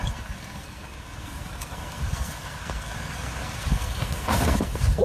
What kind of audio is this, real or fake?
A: fake